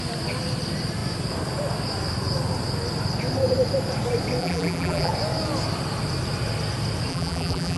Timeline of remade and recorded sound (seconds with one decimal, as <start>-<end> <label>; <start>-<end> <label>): 0.0-4.4 recorded; 4.4-5.1 remade; 5.1-7.1 recorded; 7.1-7.8 remade